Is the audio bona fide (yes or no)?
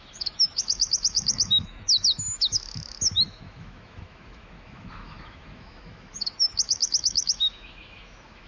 no